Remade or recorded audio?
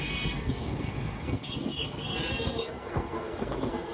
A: remade